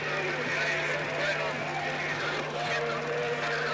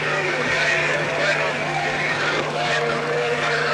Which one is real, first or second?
first